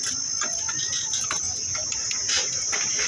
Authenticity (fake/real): real